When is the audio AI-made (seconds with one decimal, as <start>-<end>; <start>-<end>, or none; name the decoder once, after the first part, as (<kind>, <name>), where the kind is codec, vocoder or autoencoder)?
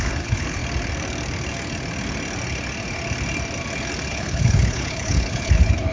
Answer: 0.0-0.6 (codec, HILCodec); 4.1-5.9